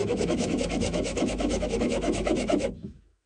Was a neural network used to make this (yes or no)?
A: yes